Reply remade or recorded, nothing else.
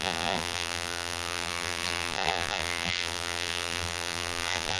remade